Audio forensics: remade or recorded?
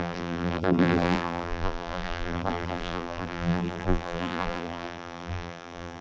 remade